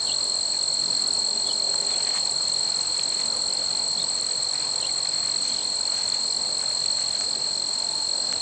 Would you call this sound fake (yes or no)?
no